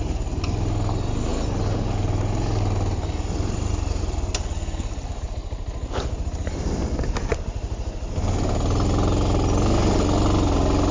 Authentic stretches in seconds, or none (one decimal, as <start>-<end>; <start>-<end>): 0.0-10.9